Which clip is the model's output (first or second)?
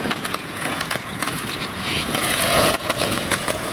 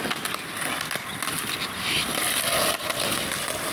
first